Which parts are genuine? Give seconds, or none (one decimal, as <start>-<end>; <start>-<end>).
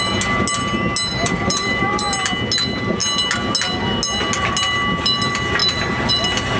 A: 0.0-1.1; 2.0-6.6